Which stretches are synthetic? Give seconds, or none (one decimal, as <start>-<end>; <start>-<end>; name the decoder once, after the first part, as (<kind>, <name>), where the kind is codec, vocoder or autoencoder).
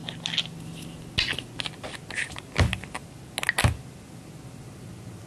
none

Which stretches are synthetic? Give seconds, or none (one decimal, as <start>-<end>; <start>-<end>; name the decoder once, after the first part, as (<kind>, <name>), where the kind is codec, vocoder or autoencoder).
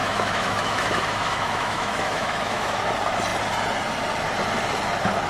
0.0-2.9 (autoencoder, DAC-VAE)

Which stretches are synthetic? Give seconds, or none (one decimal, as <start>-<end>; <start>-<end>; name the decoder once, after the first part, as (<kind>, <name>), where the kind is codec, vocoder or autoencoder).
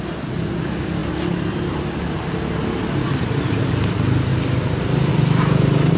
none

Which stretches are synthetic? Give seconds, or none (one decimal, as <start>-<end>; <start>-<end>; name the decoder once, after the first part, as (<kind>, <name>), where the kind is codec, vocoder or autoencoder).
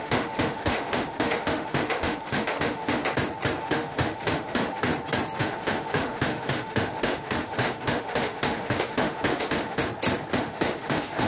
0.0-3.0 (autoencoder, DAC-VAE); 3.6-4.9; 5.4-9.8; 10.3-11.3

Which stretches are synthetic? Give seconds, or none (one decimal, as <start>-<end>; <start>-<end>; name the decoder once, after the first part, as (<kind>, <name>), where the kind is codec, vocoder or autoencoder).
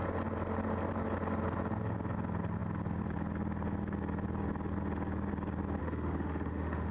5.8-6.9 (autoencoder, DAC-VAE)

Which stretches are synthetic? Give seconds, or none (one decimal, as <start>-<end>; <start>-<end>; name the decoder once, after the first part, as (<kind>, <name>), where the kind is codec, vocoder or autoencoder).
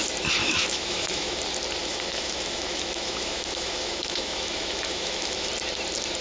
0.4-1.4 (autoencoder, DAC-VAE); 1.8-5.5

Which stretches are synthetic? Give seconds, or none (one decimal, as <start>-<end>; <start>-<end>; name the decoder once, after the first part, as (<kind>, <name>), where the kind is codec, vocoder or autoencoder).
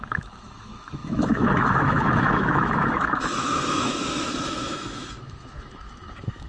0.0-6.5 (autoencoder, DAC-VAE)